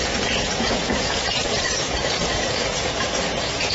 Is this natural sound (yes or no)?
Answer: no